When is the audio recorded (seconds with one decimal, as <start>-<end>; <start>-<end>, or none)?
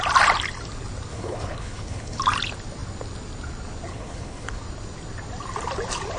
0.0-1.1; 2.2-3.9; 4.6-6.2